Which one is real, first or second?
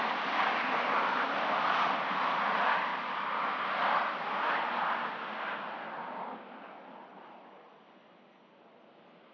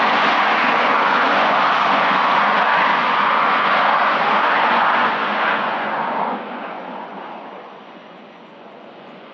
first